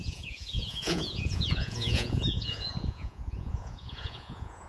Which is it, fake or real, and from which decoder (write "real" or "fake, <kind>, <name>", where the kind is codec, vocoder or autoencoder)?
fake, vocoder, Vocos